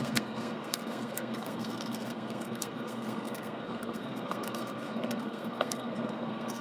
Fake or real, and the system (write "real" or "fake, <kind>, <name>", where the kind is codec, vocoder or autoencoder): fake, codec, SNAC